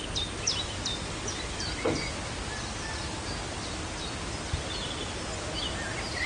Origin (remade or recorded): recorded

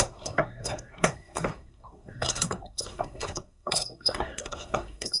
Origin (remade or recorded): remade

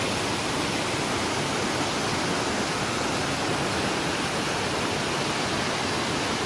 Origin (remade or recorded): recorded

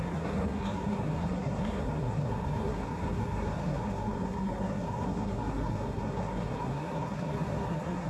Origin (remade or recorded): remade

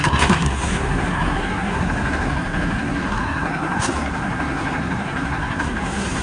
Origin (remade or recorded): remade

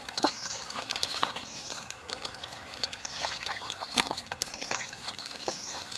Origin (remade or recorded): remade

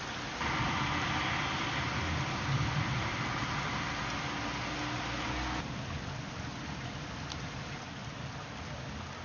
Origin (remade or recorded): recorded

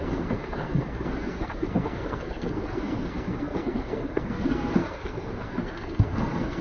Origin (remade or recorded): remade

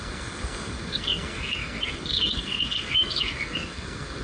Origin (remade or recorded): remade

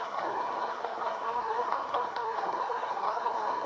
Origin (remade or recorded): remade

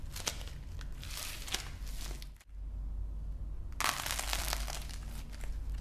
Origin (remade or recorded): recorded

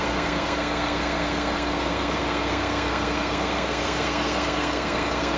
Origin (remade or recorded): remade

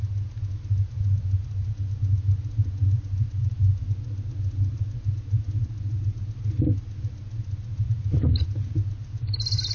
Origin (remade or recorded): recorded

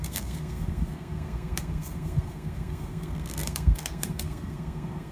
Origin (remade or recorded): remade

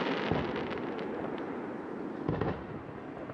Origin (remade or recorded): recorded